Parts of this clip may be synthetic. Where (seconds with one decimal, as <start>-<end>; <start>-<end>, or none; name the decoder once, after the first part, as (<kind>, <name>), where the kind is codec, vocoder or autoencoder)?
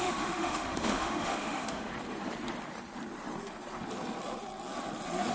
0.0-1.9 (autoencoder, DAC-VAE)